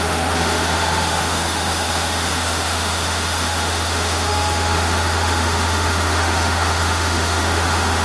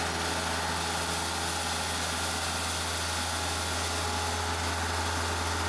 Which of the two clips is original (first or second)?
second